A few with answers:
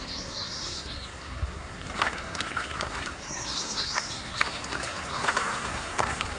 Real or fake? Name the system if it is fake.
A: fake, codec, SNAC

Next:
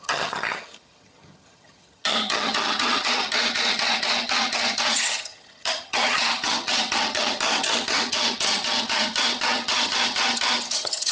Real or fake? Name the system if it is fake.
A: fake, vocoder, HiFi-GAN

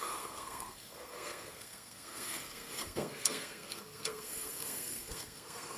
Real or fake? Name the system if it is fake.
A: fake, codec, SNAC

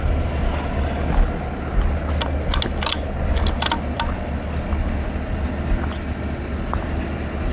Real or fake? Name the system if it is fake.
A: real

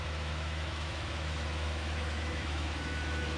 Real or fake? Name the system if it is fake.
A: fake, autoencoder, DAC-VAE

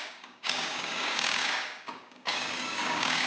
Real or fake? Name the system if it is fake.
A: fake, codec, DAC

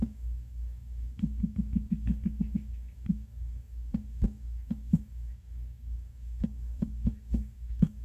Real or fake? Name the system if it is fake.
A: fake, codec, DAC